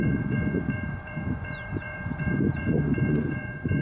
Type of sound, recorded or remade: remade